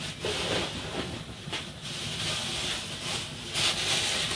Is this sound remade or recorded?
recorded